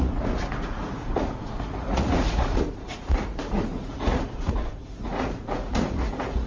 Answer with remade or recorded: remade